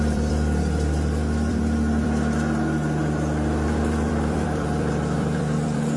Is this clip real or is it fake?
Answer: fake